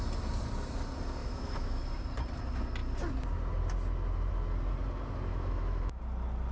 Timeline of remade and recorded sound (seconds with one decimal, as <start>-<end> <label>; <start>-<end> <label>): 0.0-1.2 recorded; 1.2-1.8 remade; 1.8-5.3 recorded; 5.3-6.0 remade; 6.0-6.5 recorded